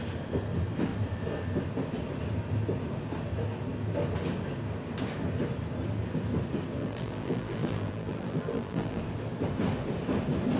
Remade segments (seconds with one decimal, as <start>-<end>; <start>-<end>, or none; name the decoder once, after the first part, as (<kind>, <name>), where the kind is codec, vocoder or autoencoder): 6.8-9.0 (vocoder, BigVGAN v2)